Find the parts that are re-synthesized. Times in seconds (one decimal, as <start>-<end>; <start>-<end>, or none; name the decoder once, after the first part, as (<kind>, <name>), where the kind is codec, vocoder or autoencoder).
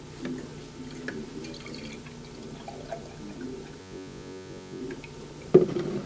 3.8-4.8 (vocoder, Vocos)